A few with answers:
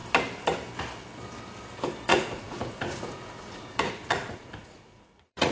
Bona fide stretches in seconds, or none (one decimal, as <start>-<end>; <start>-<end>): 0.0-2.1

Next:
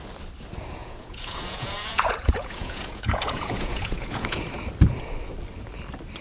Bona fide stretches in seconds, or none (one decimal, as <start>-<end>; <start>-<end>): 0.0-0.8; 4.4-6.2

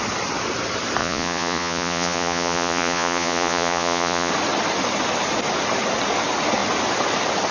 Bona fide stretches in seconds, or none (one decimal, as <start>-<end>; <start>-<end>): 0.0-1.0; 4.3-7.5